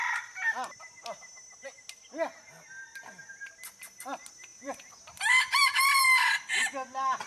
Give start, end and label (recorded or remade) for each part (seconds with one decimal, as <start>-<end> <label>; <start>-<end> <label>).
0.0-4.5 recorded; 4.5-5.0 remade; 5.0-7.3 recorded